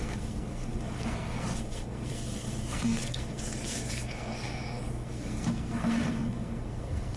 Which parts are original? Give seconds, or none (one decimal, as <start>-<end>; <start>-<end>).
none